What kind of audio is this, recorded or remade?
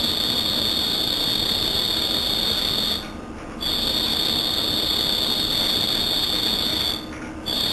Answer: recorded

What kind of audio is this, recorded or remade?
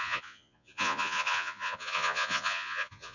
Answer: remade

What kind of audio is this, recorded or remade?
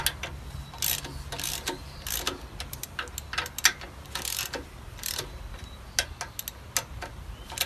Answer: recorded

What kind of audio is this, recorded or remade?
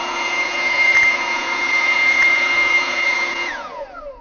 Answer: remade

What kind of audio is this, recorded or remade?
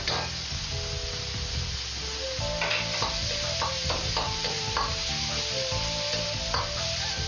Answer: recorded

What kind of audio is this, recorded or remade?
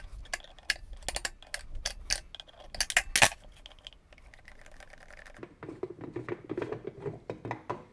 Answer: recorded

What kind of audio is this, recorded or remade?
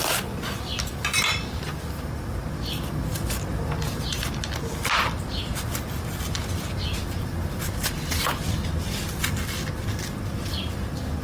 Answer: recorded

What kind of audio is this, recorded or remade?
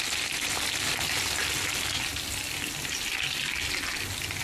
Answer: recorded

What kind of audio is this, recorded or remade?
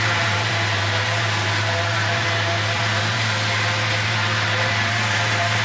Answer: remade